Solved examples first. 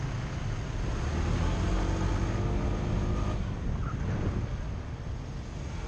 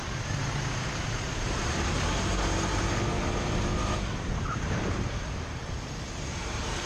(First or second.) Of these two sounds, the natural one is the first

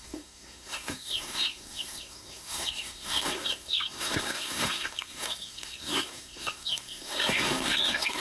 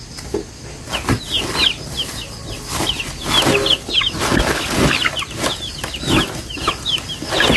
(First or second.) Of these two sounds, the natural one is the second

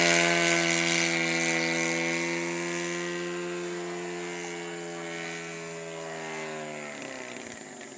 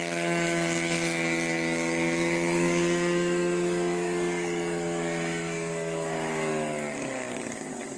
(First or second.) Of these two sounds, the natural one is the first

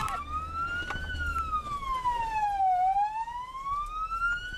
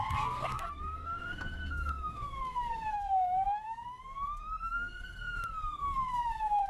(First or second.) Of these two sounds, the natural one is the first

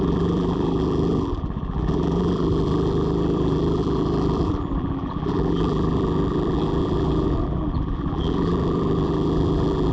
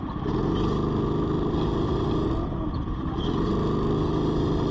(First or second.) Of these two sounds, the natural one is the second